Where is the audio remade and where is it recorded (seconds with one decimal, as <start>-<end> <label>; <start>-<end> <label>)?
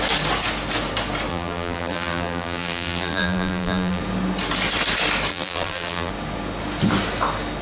0.0-1.3 recorded; 1.3-4.0 remade; 4.0-5.3 recorded; 5.3-6.1 remade; 6.1-7.6 recorded